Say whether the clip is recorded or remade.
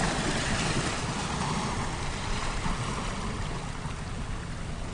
recorded